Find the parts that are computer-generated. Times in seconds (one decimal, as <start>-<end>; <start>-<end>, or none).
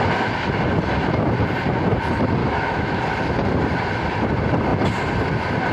2.4-3.0